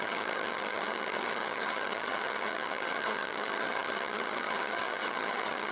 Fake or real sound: fake